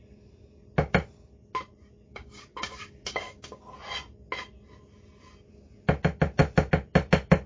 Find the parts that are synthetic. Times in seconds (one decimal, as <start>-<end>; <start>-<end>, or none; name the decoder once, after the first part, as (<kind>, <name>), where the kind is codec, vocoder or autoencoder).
2.1-3.6 (codec, DAC)